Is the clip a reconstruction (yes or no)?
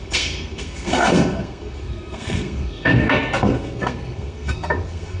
yes